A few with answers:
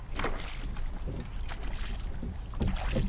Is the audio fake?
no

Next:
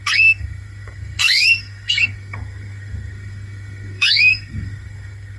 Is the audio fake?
yes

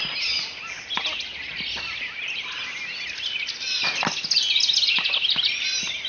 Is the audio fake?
no